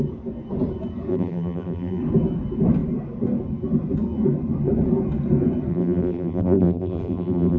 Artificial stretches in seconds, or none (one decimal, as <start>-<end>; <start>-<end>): 1.1-2.0; 5.7-7.6